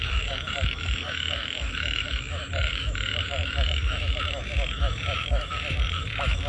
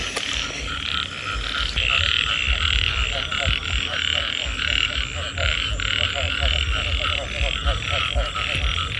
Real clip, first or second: second